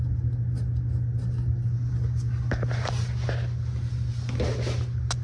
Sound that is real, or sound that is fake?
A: real